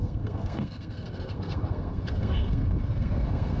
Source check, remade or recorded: remade